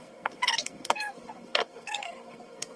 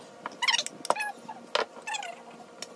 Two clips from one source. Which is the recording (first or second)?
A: second